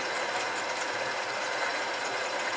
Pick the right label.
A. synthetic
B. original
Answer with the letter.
A